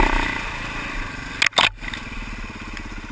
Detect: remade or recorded recorded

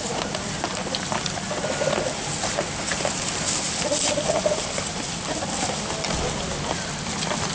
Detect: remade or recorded recorded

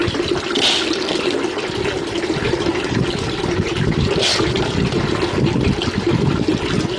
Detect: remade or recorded recorded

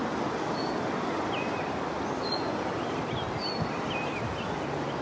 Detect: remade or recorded recorded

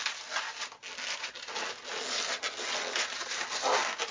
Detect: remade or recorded recorded